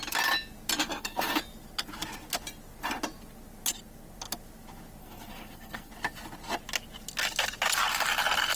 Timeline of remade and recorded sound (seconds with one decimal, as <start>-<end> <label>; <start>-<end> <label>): 0.0-0.8 recorded; 0.8-1.4 remade; 1.4-5.0 recorded; 5.0-5.9 remade; 5.9-8.6 recorded